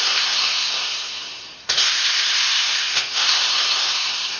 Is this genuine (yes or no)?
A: no